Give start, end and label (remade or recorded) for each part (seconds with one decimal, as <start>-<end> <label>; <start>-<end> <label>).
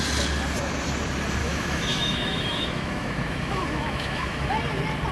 0.0-1.4 recorded; 1.4-4.5 remade; 4.5-5.1 recorded